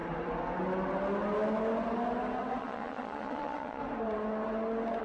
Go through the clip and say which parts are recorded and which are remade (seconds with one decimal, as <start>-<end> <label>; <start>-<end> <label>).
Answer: 0.0-2.6 recorded; 2.6-3.8 remade; 3.8-5.0 recorded